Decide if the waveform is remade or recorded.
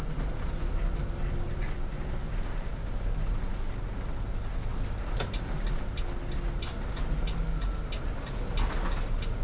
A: recorded